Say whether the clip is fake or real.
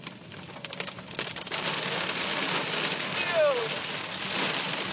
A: real